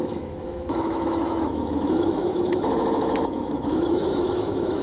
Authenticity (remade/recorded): remade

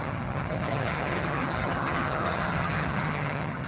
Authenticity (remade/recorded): remade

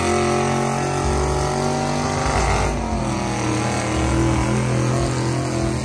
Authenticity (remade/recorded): recorded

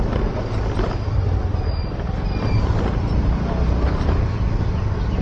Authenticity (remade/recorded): recorded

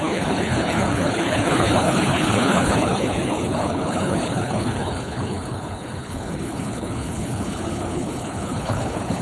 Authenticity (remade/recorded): remade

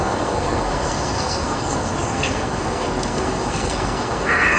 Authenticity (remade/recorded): remade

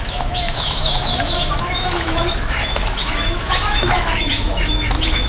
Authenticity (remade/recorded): remade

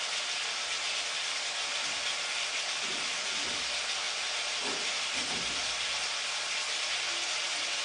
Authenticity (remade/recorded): recorded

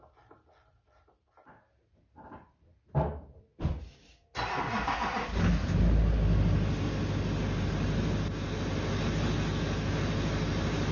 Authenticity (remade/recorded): recorded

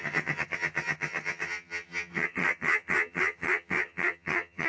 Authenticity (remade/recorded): remade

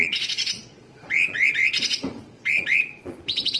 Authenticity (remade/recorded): remade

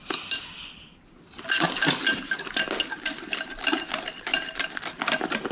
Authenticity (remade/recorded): recorded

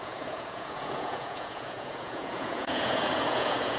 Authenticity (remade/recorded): remade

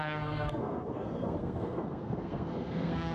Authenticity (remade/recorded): remade